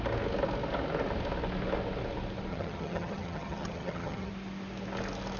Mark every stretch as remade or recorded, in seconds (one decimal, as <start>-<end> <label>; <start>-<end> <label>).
0.0-2.5 recorded; 2.5-4.3 remade; 4.3-5.4 recorded